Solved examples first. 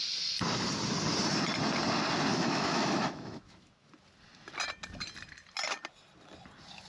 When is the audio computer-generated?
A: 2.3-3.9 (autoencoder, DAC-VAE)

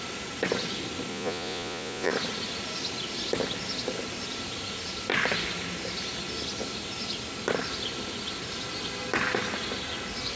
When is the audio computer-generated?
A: 1.1-2.1 (vocoder, Vocos)

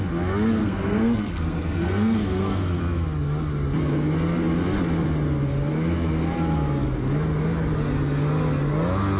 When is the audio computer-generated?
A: 0.6-2.8 (codec, SNAC)

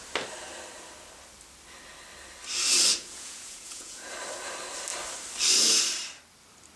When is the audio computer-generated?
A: 2.9-4.1 (vocoder, Vocos)

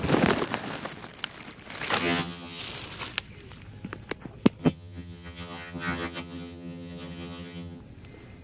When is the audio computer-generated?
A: 2.0-2.6 (vocoder, HiFi-GAN); 4.6-7.8

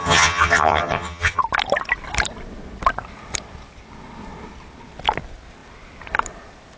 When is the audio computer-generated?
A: 0.0-1.4 (vocoder, HiFi-GAN)

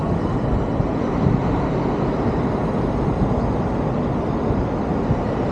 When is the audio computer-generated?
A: none

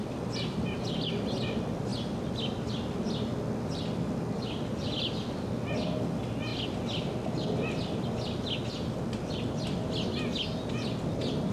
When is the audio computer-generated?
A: none